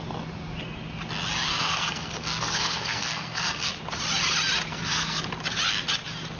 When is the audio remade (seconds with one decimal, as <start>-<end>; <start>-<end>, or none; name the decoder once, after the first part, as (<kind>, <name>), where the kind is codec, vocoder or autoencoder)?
1.5-3.7 (codec, SNAC); 4.7-5.2